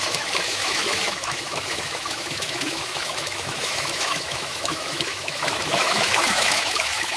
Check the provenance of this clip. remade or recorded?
remade